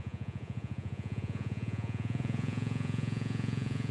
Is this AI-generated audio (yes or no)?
yes